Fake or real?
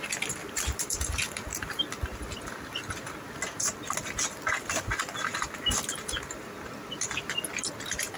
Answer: real